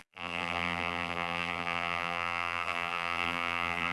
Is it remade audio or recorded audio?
remade